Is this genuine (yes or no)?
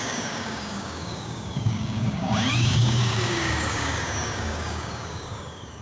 no